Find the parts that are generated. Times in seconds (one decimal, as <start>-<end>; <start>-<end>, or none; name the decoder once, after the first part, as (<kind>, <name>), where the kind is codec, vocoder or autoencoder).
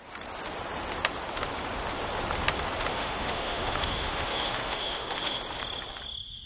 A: 2.9-5.4 (autoencoder, DAC-VAE)